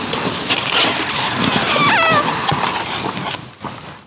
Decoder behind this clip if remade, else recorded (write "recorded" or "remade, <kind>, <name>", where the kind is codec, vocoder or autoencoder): recorded